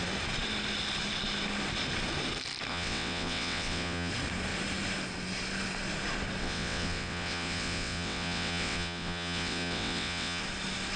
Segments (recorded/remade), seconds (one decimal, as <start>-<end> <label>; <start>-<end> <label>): 0.0-2.7 recorded; 2.7-4.1 remade; 4.1-6.4 recorded; 6.4-10.4 remade; 10.4-11.0 recorded